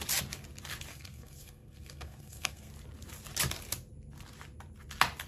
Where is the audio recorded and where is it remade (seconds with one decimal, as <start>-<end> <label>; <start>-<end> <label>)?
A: 0.0-0.9 recorded; 0.9-2.7 remade; 2.7-5.3 recorded